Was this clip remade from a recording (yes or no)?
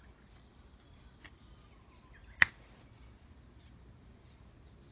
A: no